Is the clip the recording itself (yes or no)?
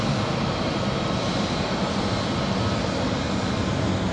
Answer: yes